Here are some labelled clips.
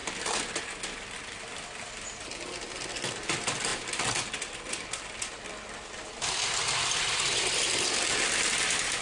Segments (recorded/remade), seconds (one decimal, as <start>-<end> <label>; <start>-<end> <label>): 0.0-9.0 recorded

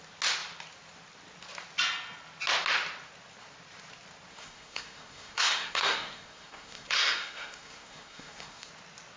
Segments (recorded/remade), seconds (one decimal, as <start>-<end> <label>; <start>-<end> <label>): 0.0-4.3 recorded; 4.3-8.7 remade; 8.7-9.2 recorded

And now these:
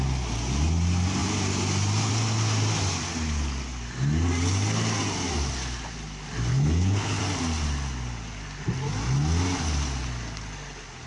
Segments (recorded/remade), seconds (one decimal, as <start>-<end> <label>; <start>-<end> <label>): 0.0-6.5 recorded; 6.5-7.2 remade; 7.2-11.1 recorded

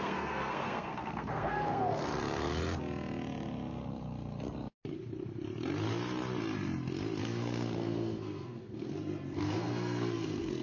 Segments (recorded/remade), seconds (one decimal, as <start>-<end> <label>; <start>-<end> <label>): 0.0-2.1 remade; 2.1-7.2 recorded; 7.2-10.6 remade